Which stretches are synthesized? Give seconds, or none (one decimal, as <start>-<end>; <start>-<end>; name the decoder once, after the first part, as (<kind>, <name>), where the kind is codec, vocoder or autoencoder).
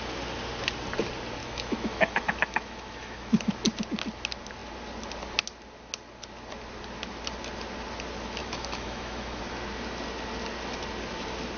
1.4-3.5 (autoencoder, DAC-VAE); 8.4-9.4